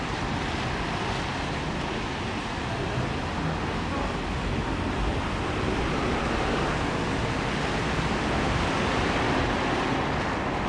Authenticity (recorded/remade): recorded